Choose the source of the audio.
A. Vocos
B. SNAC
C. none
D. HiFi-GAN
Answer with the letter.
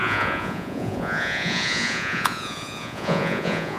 A